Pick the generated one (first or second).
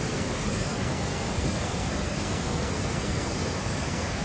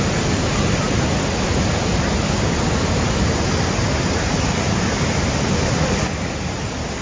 first